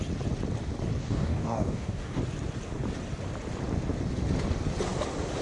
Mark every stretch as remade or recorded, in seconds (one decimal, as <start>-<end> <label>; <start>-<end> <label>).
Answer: 0.0-1.0 recorded; 1.0-2.2 remade; 2.2-5.4 recorded